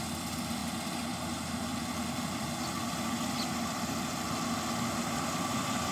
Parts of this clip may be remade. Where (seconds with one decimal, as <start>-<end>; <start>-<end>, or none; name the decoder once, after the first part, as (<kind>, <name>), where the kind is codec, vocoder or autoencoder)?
none